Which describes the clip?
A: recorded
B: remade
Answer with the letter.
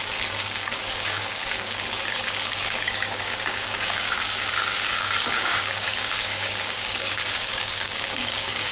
B